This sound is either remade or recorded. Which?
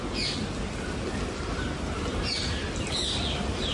recorded